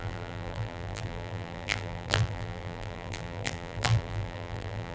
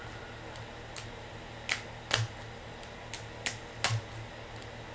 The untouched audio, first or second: second